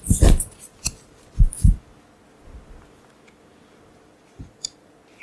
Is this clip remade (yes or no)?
no